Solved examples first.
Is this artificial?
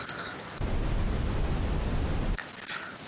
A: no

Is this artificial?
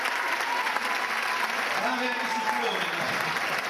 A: no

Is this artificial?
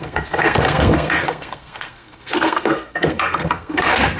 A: yes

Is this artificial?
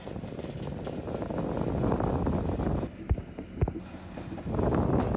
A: no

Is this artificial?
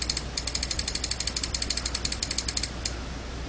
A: no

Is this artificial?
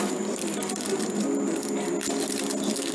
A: no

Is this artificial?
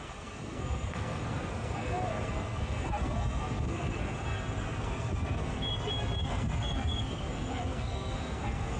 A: yes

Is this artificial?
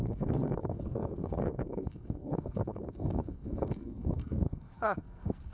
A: yes